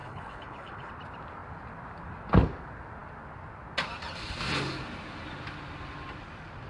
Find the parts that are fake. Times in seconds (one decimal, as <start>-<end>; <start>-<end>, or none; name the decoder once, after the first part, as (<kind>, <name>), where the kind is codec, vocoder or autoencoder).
0.0-0.9 (codec, HILCodec)